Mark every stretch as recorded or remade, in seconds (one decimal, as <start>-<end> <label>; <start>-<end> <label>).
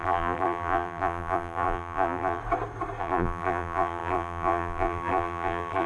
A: 0.0-2.4 remade; 2.4-3.0 recorded; 3.0-5.9 remade